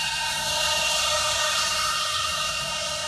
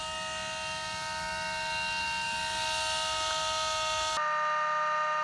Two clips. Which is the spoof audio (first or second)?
first